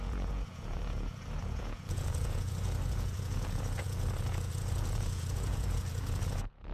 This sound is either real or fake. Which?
fake